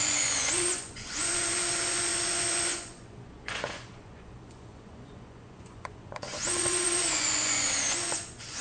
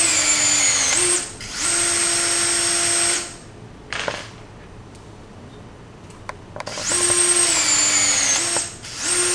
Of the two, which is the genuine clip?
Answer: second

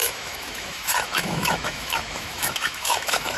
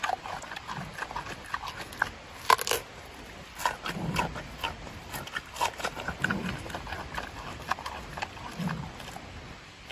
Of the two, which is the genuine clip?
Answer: second